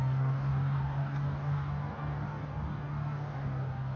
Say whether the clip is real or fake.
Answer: fake